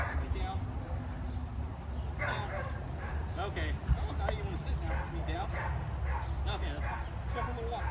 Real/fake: real